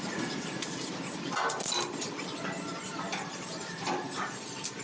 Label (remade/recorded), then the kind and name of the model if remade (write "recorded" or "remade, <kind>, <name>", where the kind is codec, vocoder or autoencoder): recorded